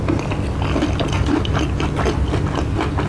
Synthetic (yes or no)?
no